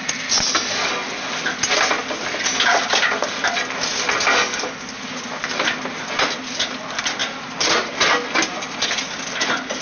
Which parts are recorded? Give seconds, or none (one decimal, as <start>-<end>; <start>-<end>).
0.0-9.8